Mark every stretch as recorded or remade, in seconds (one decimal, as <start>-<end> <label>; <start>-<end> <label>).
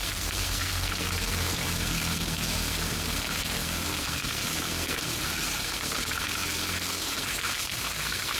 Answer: 0.0-8.4 remade